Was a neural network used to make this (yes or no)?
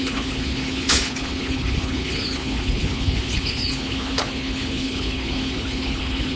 yes